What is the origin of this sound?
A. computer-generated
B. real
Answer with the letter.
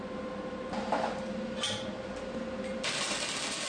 B